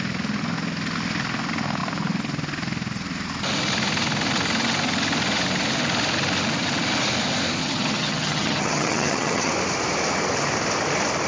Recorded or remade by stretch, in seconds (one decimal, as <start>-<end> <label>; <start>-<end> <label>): 0.0-7.6 recorded; 7.6-9.5 remade; 9.5-11.3 recorded